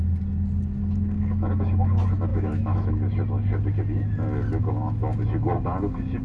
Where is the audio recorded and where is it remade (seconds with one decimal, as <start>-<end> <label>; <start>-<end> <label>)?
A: 0.0-2.3 recorded; 2.3-2.9 remade; 2.9-6.2 recorded